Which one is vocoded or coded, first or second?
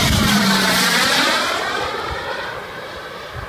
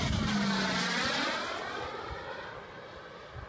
first